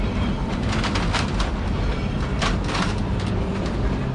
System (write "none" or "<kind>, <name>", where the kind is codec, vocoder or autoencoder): none